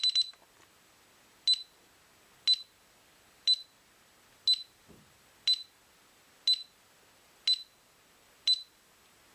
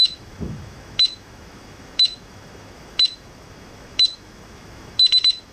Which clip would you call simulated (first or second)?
second